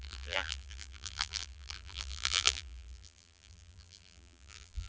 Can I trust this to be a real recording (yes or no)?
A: no